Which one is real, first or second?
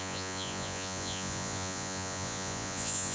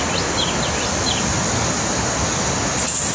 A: second